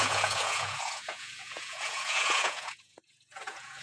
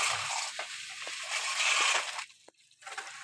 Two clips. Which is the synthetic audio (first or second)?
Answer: first